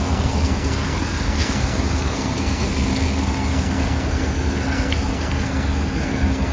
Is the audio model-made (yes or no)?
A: yes